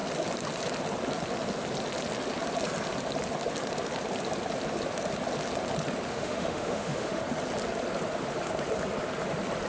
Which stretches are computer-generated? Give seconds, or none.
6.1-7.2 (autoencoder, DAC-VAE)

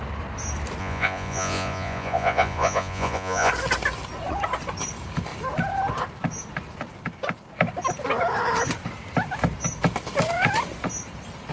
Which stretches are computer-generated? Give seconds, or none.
0.8-3.5 (vocoder, Vocos)